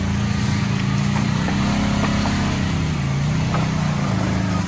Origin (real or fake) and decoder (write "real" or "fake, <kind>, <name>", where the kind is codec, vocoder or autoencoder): real